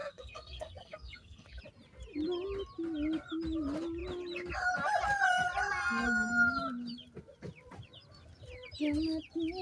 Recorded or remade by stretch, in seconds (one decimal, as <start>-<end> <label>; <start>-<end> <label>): 0.0-1.6 remade; 1.6-9.6 recorded